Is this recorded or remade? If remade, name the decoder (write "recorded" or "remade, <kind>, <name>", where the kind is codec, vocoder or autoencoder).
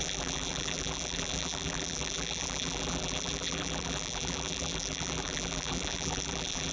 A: remade, vocoder, BigVGAN v2